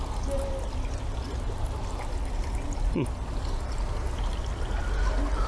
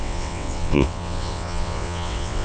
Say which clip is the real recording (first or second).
first